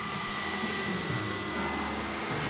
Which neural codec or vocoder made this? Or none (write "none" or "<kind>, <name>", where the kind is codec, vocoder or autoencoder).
vocoder, BigVGAN v2